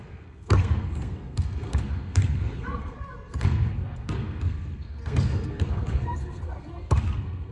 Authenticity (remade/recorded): remade